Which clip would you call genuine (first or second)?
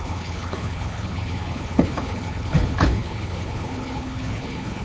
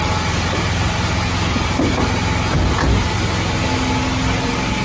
second